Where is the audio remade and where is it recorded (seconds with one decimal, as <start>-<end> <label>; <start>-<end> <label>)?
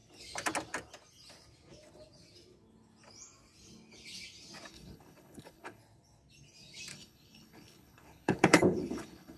0.0-4.7 recorded; 4.7-5.8 remade; 5.8-6.9 recorded; 6.9-9.4 remade